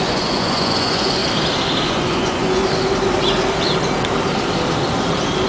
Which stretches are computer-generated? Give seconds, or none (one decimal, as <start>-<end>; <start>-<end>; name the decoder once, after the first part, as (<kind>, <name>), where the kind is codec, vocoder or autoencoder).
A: 0.0-1.2 (vocoder, Vocos); 1.8-2.6